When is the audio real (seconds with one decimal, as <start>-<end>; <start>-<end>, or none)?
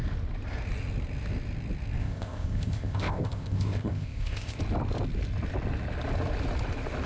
0.0-2.0; 4.6-7.1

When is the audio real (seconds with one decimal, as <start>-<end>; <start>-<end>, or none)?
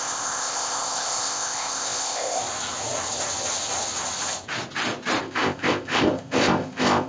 2.4-5.2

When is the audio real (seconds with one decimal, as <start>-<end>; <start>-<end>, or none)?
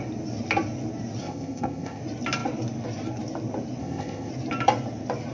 0.0-1.2; 2.0-3.8; 4.3-5.3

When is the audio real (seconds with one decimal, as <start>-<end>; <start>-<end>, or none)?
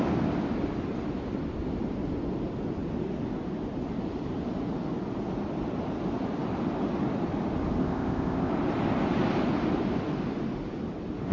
0.0-7.8; 8.5-11.3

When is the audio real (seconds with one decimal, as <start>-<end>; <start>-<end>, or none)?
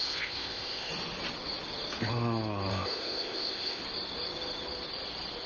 0.9-2.7; 3.8-5.5